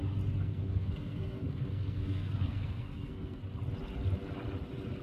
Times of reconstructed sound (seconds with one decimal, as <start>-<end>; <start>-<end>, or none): 0.4-3.4